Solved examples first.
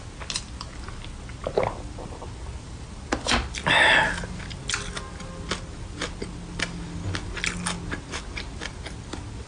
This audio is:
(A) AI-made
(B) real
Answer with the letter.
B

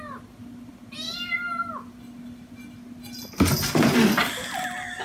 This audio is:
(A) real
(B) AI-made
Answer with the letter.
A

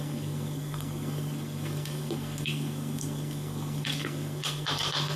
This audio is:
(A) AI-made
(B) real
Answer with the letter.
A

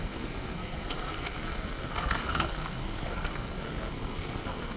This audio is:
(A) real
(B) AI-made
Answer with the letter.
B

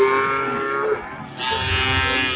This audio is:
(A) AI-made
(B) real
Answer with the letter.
B